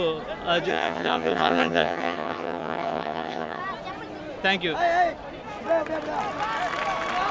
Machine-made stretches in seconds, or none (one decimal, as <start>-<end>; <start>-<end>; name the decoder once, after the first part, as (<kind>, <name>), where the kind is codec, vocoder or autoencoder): 0.7-3.6 (vocoder, HiFi-GAN)